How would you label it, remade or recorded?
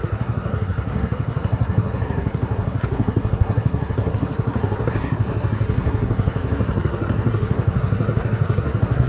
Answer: remade